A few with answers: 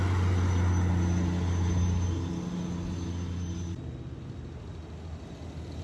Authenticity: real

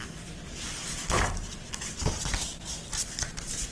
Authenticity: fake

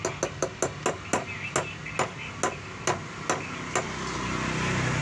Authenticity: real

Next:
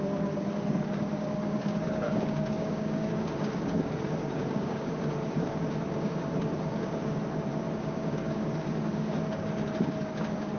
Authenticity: fake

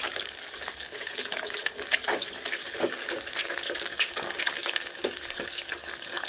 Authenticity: fake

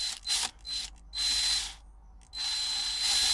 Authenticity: real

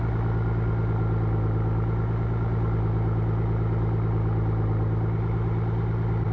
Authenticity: real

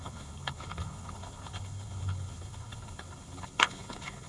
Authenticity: fake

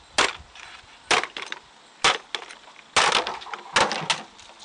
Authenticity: real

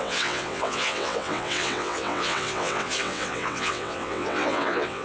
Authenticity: fake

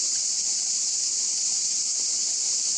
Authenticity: real